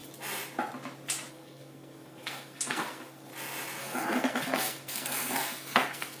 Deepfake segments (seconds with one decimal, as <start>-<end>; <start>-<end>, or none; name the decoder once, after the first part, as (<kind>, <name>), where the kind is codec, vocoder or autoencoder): 1.3-3.3 (codec, SNAC); 3.8-6.2